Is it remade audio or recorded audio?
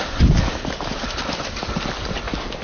recorded